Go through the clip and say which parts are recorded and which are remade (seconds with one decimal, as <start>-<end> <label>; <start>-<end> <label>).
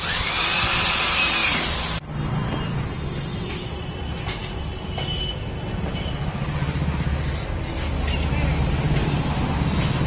0.0-10.1 recorded